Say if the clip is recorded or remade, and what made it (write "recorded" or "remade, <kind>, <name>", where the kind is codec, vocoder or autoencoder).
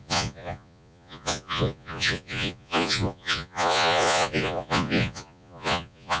remade, vocoder, Vocos